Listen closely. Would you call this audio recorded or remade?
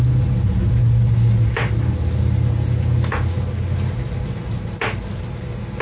recorded